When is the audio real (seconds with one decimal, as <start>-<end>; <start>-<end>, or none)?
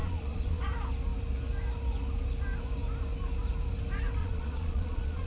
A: 0.6-4.2